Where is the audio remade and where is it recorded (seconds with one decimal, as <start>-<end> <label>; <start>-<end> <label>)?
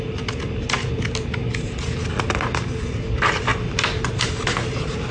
0.0-3.5 recorded; 3.5-4.3 remade; 4.3-5.1 recorded